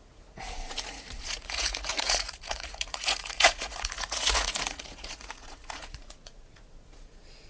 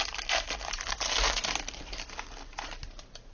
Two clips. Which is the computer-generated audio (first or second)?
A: first